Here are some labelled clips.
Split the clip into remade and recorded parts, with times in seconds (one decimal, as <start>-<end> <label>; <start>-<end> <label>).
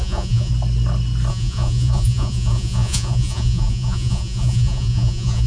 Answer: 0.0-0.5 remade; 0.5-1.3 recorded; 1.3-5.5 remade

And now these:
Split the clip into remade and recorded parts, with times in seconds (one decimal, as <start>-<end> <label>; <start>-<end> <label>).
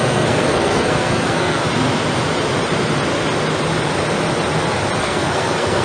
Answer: 0.0-1.6 remade; 1.6-5.0 recorded; 5.0-5.8 remade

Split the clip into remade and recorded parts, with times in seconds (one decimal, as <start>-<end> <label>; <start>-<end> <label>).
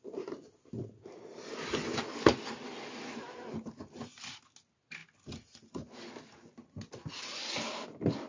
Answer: 0.0-8.3 recorded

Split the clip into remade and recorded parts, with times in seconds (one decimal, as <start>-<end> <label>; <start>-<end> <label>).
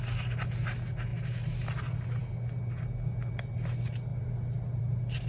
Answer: 0.0-5.3 recorded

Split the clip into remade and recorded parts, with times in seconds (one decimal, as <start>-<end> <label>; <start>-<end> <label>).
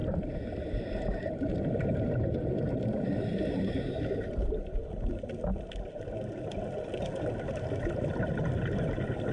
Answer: 0.0-3.7 remade; 3.7-9.3 recorded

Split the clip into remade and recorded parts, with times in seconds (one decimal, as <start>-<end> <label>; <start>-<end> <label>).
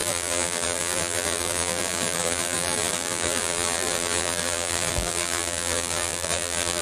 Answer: 0.0-6.8 remade